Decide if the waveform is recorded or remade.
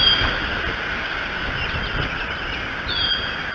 recorded